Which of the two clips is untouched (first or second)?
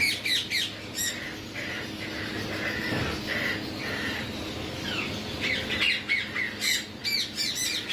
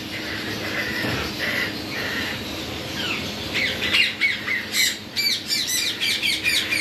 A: first